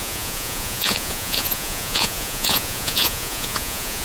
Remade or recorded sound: remade